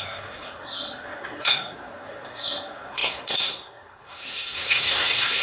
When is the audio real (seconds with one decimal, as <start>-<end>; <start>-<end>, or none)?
none